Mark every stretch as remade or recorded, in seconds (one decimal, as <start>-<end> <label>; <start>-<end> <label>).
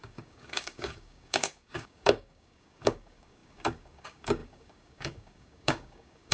0.0-6.3 remade